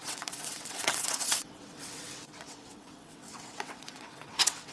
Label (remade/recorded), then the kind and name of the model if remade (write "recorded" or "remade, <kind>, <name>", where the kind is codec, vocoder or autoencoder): remade, vocoder, WaveNeXt